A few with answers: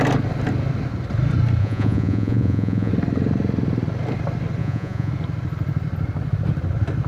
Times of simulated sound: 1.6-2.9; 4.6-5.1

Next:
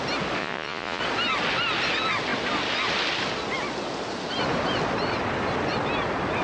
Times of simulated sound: 0.4-1.0

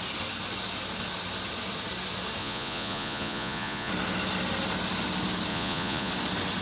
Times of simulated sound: 2.4-3.9; 5.5-6.1

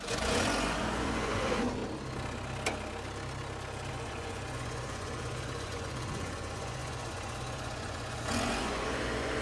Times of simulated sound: 0.0-1.8; 3.9-9.4

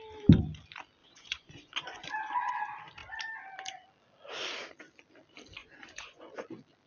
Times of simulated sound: 1.0-2.5; 5.6-6.2

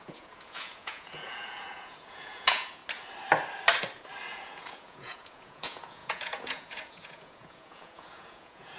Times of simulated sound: 0.0-2.8; 4.3-8.8